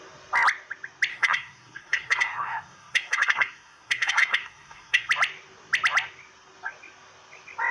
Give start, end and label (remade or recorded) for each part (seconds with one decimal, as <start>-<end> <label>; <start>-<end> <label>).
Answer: 0.0-1.1 recorded; 1.1-5.1 remade; 5.1-7.7 recorded